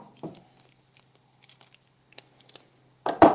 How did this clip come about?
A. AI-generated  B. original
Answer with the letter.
A